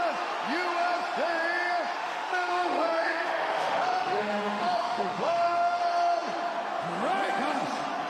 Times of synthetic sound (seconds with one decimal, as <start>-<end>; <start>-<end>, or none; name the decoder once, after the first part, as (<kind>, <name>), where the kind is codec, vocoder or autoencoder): 2.0-5.8 (autoencoder, DAC-VAE)